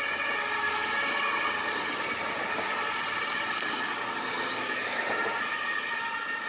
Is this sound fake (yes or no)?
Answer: no